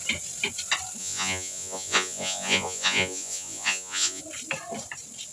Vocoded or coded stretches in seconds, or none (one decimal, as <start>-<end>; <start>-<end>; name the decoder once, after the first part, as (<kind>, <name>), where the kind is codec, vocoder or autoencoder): 1.0-4.2 (vocoder, Vocos)